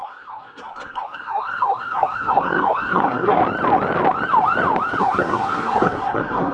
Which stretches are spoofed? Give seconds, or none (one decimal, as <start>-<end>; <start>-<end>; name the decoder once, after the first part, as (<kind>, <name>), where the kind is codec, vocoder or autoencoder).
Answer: 0.0-3.4 (codec, SNAC); 5.0-6.5